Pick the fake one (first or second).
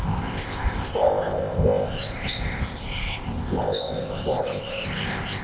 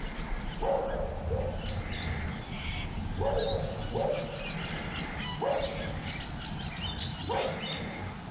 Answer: first